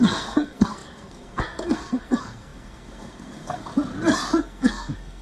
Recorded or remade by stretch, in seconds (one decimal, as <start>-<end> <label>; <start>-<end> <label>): 0.0-3.7 remade; 3.7-4.4 recorded; 4.4-5.2 remade